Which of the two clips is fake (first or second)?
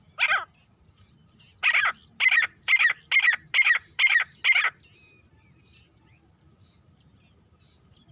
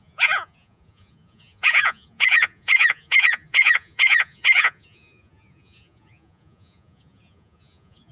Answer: second